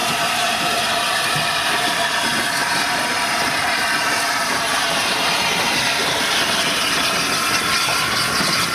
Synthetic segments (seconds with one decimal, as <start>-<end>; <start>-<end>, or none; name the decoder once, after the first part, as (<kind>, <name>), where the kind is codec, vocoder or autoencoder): 0.0-0.6 (vocoder, BigVGAN v2); 2.6-7.2